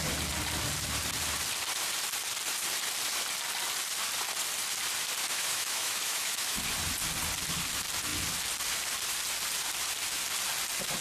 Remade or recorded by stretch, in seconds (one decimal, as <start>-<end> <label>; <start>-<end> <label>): 0.0-5.2 recorded; 5.2-6.6 remade; 6.6-11.0 recorded